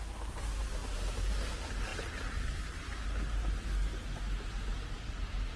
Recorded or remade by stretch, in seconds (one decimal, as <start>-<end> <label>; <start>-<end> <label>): 0.0-5.6 recorded

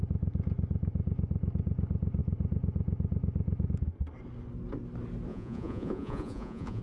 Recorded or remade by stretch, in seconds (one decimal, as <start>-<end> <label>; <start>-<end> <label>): 0.0-5.3 recorded; 5.3-6.8 remade

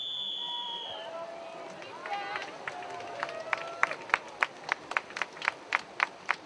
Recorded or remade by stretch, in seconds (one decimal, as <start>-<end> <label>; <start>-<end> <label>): 0.0-2.0 remade; 2.0-4.8 recorded; 4.8-6.5 remade